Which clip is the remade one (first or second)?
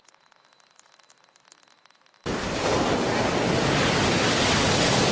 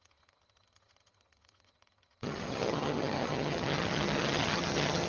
second